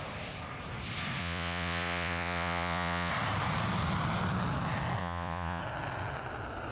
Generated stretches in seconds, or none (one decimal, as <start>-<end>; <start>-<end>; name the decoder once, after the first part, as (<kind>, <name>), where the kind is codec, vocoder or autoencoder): 1.2-3.1 (vocoder, Vocos); 5.0-5.6